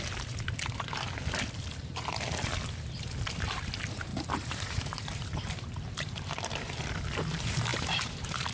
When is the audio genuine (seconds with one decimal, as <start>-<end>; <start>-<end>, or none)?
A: 0.0-4.1; 6.7-7.7